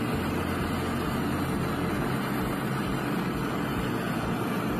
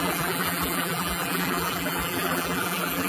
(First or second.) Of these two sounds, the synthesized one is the second